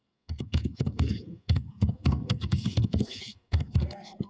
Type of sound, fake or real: fake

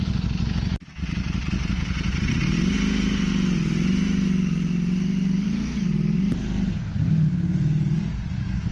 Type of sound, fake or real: real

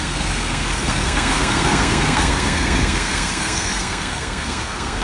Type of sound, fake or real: fake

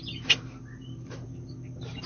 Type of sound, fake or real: real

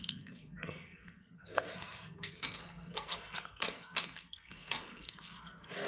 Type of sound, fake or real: fake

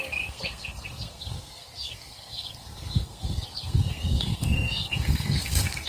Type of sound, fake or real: fake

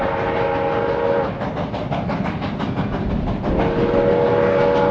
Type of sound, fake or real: real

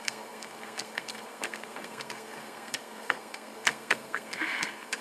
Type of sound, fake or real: fake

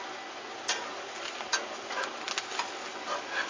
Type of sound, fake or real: real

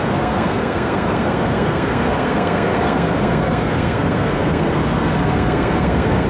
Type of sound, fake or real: fake